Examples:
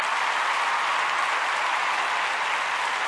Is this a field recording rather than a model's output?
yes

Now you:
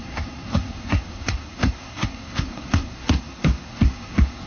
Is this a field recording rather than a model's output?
no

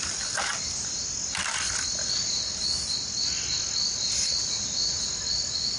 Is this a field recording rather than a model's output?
yes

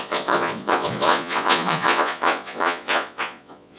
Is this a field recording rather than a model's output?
no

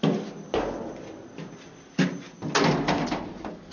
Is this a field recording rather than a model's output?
yes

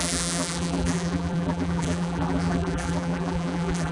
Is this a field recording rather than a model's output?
no